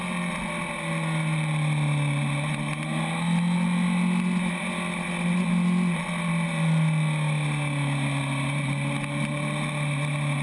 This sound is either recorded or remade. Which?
recorded